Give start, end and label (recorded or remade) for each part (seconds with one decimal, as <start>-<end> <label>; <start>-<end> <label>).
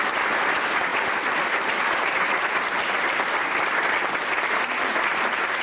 0.0-5.6 recorded